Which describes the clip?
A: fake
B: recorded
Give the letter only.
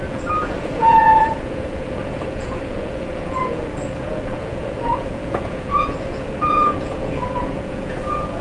A